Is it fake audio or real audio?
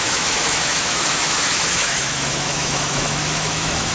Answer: fake